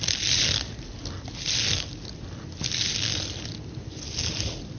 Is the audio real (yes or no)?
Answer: yes